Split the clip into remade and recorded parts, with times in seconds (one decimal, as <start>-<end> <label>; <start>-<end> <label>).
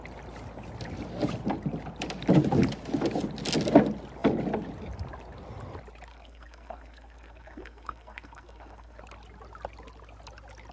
0.0-6.1 recorded; 6.1-9.0 remade; 9.0-10.7 recorded